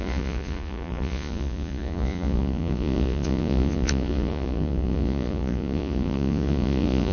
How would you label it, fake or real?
fake